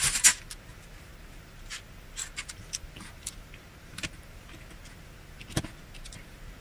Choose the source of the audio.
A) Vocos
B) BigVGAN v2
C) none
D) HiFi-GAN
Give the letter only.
B